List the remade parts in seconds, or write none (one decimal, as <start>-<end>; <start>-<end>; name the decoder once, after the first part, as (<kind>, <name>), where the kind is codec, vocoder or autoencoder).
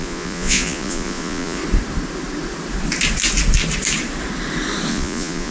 0.0-1.6 (vocoder, Vocos); 4.9-5.5